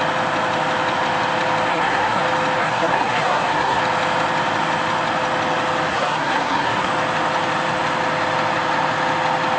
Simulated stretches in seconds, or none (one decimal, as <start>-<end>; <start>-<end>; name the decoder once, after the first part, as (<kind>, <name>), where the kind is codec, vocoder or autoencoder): 1.7-2.2 (codec, SNAC); 2.6-3.8; 5.9-6.9